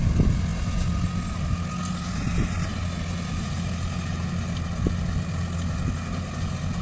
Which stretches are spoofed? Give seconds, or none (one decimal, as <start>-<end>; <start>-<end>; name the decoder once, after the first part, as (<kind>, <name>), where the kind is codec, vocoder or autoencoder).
none